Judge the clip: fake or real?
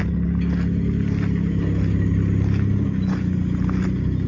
real